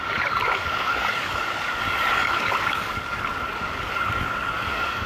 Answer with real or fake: fake